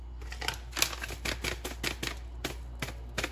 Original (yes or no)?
yes